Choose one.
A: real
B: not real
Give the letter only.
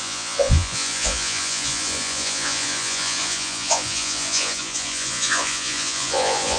B